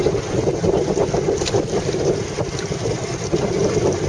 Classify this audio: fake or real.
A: real